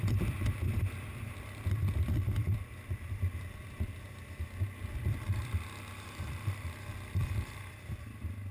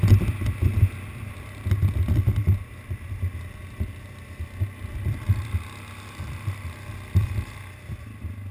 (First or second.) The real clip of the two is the second